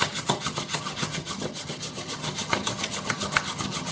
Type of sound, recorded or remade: remade